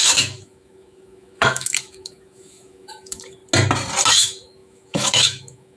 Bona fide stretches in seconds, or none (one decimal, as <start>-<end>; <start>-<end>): 3.4-4.1